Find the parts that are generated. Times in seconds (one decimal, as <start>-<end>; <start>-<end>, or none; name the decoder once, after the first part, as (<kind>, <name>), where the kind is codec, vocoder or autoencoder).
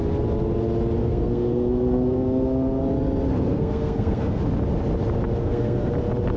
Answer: 1.0-2.8 (codec, SNAC); 3.3-4.4; 5.4-5.9